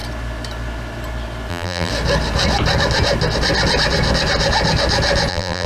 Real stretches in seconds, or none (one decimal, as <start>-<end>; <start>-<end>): 0.0-1.5; 1.9-5.3